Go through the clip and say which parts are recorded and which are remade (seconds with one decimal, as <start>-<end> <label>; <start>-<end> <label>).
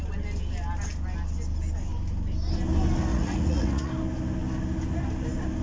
0.0-3.1 recorded; 3.1-3.9 remade; 3.9-5.6 recorded